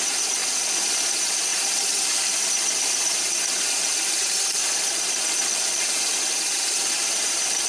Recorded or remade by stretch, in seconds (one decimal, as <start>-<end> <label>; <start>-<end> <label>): 0.0-0.4 remade; 0.4-1.0 recorded; 1.0-7.7 remade